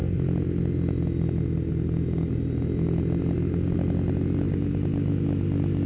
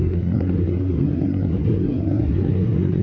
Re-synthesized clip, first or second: second